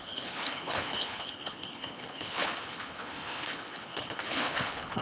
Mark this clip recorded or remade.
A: remade